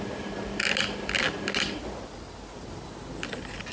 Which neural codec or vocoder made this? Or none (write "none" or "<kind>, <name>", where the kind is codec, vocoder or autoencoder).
none